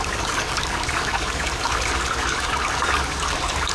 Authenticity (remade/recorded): remade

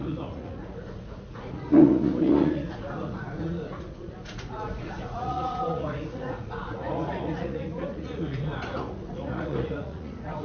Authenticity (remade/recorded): remade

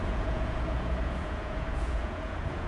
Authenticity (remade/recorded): remade